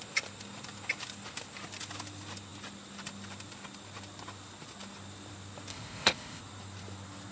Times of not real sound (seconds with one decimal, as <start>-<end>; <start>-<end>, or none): 5.7-6.4